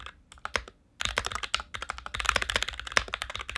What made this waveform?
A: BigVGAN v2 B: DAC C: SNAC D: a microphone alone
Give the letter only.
D